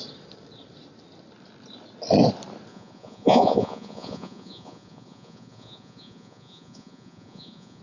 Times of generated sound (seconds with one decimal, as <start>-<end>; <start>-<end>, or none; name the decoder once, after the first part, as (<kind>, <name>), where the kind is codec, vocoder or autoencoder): 2.7-7.8 (vocoder, Vocos)